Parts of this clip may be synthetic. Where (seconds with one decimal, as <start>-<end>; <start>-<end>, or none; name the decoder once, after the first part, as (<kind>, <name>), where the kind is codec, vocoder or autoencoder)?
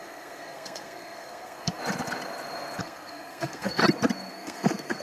0.0-1.8 (codec, SNAC); 2.8-3.8; 4.3-5.0